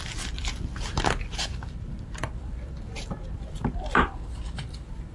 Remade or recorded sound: remade